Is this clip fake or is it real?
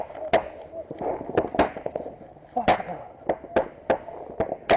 real